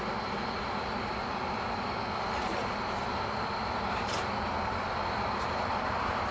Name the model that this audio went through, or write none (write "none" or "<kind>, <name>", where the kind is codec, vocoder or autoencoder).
none